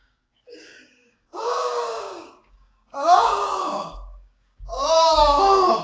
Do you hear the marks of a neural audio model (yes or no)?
yes